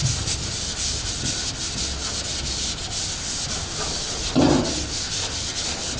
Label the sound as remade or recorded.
recorded